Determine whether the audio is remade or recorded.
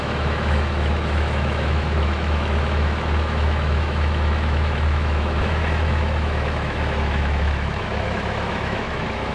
remade